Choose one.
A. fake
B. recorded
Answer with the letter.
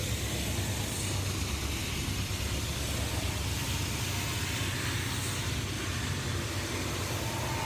B